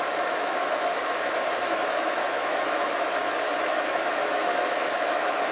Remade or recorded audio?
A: remade